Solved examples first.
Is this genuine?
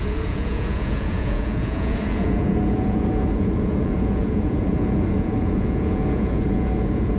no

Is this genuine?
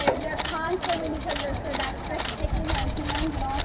no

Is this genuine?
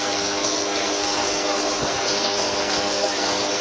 no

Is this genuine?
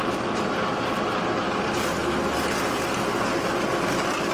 yes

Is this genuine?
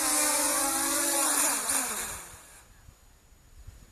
yes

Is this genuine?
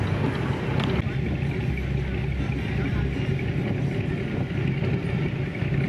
yes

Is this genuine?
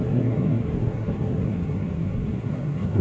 no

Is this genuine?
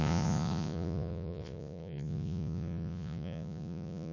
no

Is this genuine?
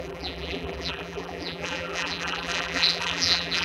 no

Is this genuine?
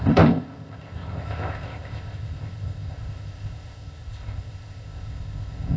no